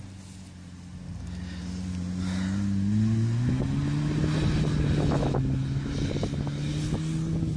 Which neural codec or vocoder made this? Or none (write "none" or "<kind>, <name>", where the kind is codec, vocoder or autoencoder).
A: none